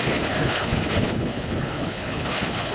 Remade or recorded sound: remade